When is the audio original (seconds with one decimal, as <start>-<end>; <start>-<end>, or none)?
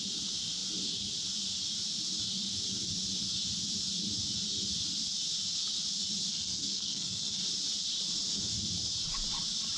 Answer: 0.0-6.3; 7.4-9.8